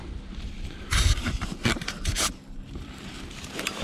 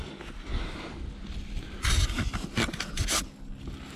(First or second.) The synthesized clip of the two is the first